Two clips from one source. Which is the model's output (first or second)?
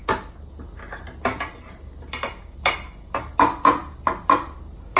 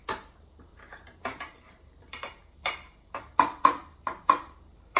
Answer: second